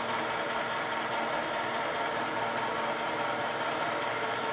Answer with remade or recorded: recorded